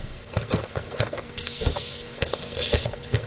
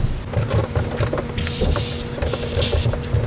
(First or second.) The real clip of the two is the second